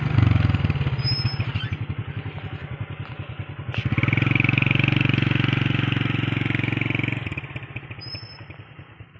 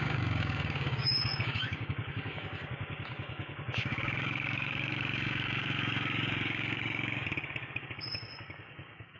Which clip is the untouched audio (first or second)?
first